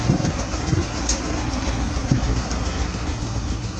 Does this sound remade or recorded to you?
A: remade